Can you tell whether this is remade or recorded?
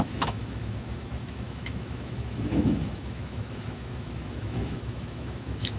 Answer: remade